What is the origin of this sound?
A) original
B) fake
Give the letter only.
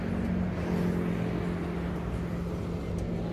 A